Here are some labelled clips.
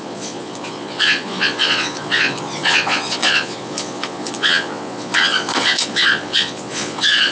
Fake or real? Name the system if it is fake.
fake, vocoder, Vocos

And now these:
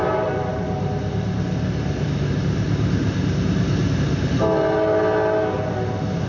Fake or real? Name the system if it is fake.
real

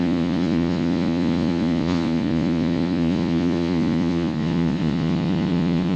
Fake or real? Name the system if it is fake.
fake, vocoder, Vocos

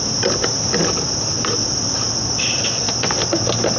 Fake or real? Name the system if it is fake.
real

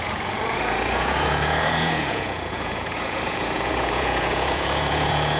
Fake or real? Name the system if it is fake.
fake, vocoder, Vocos